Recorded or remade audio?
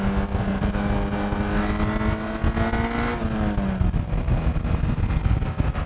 recorded